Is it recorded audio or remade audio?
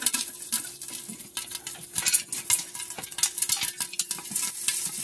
recorded